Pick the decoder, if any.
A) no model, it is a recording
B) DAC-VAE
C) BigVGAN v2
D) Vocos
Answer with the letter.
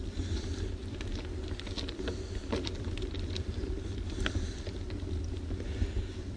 C